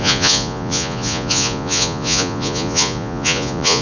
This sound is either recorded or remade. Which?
remade